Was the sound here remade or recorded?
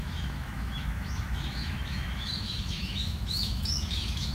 remade